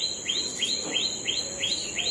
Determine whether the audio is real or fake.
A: real